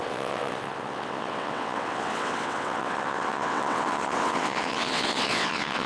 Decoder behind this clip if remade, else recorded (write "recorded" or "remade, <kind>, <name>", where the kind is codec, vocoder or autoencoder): remade, vocoder, WaveNeXt